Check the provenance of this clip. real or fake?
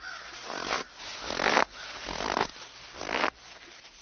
real